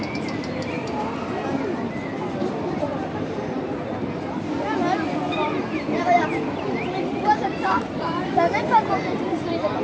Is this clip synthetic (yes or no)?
yes